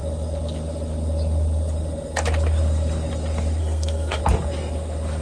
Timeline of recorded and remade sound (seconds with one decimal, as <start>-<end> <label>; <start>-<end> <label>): 0.0-3.6 recorded; 3.6-4.2 remade; 4.2-5.2 recorded